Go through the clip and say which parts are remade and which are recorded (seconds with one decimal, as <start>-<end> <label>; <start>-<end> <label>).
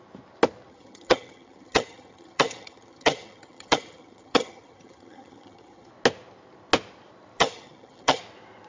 0.0-0.7 recorded; 0.7-5.9 remade; 5.9-7.4 recorded; 7.4-8.2 remade; 8.2-8.7 recorded